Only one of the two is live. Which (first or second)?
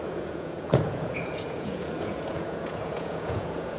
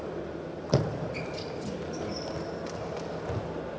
second